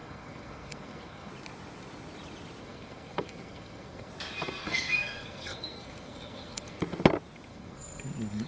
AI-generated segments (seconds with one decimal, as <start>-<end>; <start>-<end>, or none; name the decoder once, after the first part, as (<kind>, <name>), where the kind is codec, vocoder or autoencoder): 0.0-1.3 (codec, SNAC); 2.6-4.1; 4.6-6.8; 7.5-8.0